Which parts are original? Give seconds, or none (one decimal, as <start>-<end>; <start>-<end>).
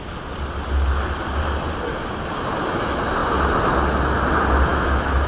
0.0-4.7